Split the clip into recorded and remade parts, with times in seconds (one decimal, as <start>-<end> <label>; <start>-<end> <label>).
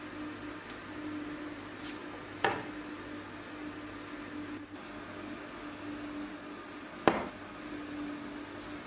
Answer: 0.0-8.9 recorded